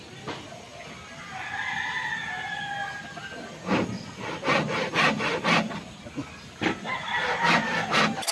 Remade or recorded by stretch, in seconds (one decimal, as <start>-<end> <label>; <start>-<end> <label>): 0.0-8.3 recorded

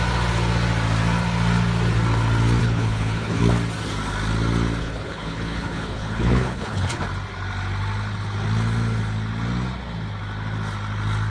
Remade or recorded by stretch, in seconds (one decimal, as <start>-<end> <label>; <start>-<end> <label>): 0.0-2.6 recorded; 2.6-3.4 remade; 3.4-4.8 recorded; 4.8-7.0 remade; 7.0-11.3 recorded

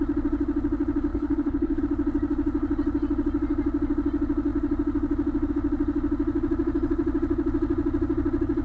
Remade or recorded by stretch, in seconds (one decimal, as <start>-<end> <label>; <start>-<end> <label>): 0.0-1.1 recorded; 1.1-1.8 remade; 1.8-8.6 recorded

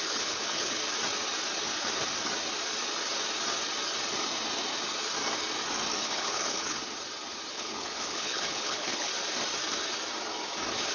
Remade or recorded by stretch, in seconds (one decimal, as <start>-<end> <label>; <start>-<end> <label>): 0.0-0.8 remade; 0.8-6.0 recorded; 6.0-6.8 remade; 6.8-7.5 recorded; 7.5-9.1 remade; 9.1-10.9 recorded

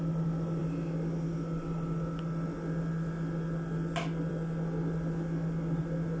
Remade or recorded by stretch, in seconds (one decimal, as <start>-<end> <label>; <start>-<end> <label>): 0.0-6.2 recorded

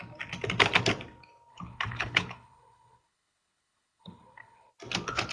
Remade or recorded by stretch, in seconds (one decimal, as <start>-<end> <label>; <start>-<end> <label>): 0.0-1.5 recorded; 1.5-4.7 remade; 4.7-5.3 recorded

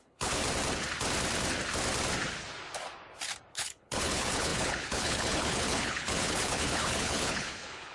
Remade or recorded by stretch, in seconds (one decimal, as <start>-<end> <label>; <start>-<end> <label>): 0.0-0.4 remade; 0.4-3.5 recorded; 3.5-7.9 remade

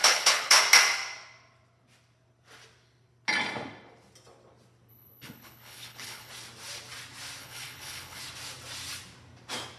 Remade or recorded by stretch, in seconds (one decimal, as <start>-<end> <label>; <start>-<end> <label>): 0.0-0.6 remade; 0.6-4.9 recorded; 4.9-6.3 remade; 6.3-7.4 recorded; 7.4-8.2 remade; 8.2-9.8 recorded